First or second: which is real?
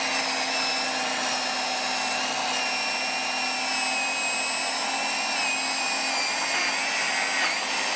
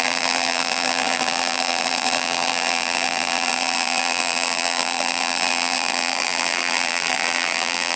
first